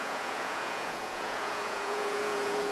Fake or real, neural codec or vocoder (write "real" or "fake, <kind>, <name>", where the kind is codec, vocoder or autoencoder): fake, vocoder, Vocos